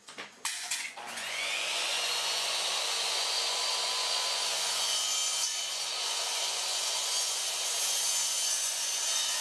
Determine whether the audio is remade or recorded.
remade